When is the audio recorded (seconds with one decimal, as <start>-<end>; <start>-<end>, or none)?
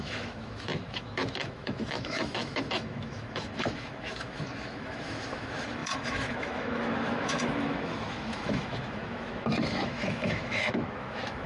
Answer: none